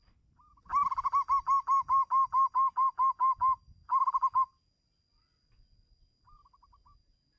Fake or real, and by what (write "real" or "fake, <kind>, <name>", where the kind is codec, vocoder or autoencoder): real